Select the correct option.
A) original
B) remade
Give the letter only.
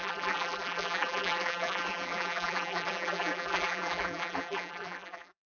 B